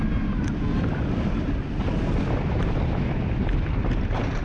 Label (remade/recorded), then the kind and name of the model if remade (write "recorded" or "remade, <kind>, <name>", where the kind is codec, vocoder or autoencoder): recorded